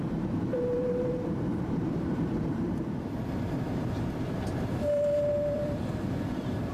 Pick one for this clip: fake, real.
fake